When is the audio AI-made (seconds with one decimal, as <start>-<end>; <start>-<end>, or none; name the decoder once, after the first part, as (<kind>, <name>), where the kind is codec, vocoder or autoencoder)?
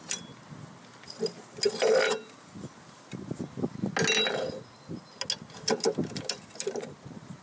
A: none